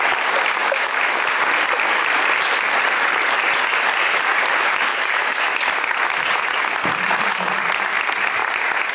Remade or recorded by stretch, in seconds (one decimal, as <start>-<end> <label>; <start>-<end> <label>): 0.0-0.6 recorded; 0.6-1.2 remade; 1.2-4.9 recorded; 4.9-5.4 remade; 5.4-8.9 recorded